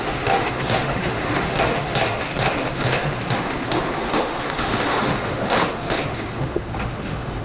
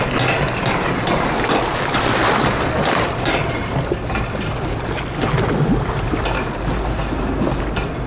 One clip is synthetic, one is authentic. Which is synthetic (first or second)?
first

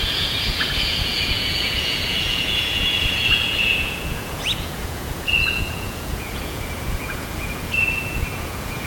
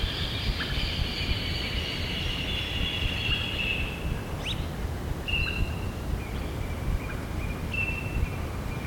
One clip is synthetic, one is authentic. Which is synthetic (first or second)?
first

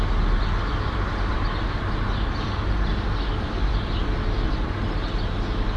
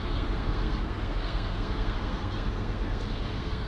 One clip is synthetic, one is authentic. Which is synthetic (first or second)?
second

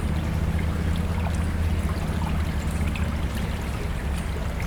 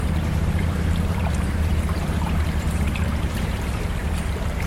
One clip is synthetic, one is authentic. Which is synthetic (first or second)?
second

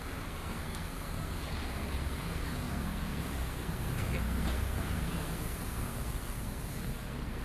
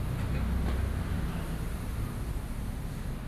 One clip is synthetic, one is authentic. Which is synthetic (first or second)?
first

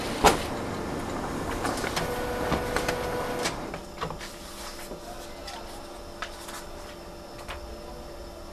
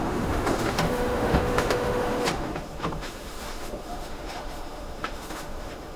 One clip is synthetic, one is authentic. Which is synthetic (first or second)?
second